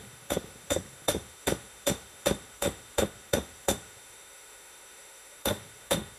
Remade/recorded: remade